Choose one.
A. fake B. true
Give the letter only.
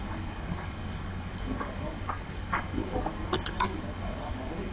A